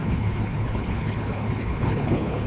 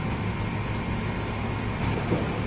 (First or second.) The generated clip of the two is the first